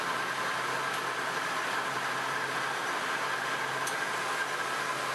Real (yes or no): yes